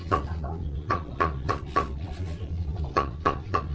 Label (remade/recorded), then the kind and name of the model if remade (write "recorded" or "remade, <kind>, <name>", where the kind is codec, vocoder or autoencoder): remade, vocoder, Vocos